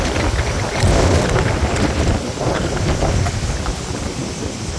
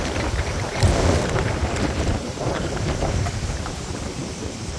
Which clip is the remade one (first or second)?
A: second